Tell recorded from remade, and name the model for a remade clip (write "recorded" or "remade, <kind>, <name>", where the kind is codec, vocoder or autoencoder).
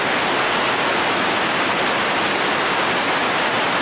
recorded